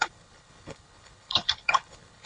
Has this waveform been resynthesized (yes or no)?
yes